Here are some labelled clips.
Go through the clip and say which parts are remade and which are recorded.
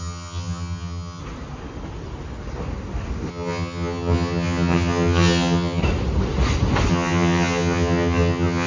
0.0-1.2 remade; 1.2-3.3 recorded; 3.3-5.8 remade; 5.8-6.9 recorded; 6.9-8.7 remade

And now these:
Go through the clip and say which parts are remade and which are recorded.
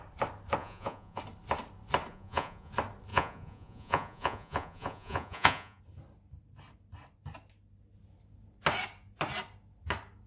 0.0-0.6 recorded; 0.6-1.2 remade; 1.2-2.1 recorded; 2.1-2.7 remade; 2.7-3.1 recorded; 3.1-5.8 remade; 5.8-10.3 recorded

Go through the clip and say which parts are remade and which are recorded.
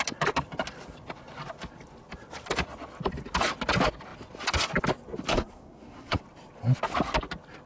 0.0-5.3 recorded; 5.3-6.2 remade; 6.2-7.7 recorded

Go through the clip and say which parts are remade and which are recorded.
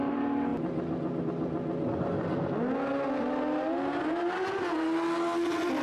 0.0-5.8 recorded